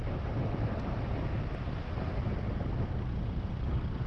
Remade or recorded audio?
recorded